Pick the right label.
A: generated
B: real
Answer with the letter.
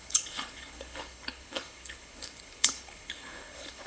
A